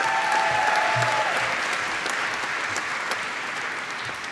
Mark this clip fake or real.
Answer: real